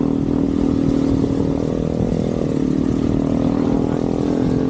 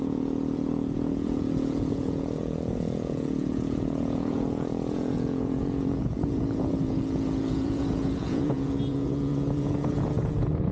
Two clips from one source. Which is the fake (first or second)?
second